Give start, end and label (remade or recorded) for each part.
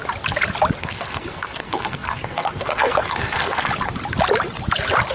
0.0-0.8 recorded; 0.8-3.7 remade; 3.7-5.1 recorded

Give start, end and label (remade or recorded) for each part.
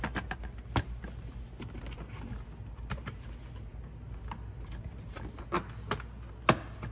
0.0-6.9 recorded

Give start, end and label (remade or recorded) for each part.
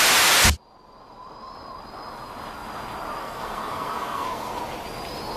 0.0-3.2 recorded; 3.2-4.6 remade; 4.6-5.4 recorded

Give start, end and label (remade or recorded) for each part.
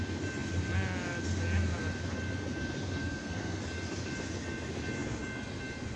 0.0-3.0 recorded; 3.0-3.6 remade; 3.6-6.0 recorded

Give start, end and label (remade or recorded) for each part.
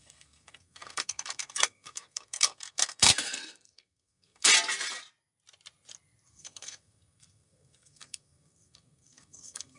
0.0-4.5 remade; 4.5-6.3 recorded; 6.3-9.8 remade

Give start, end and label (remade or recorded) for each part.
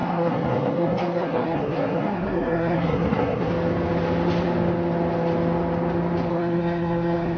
0.0-3.5 remade; 3.5-6.3 recorded; 6.3-7.4 remade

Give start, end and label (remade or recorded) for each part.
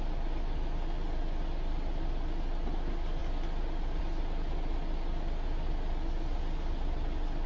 0.0-7.5 recorded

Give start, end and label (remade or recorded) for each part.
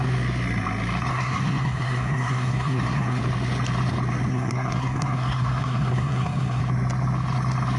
0.0-1.1 recorded; 1.1-3.2 remade; 3.2-4.3 recorded; 4.3-6.6 remade; 6.6-7.8 recorded